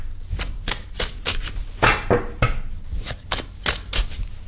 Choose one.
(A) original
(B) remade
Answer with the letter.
A